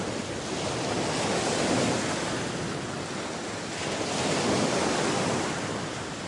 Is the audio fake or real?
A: real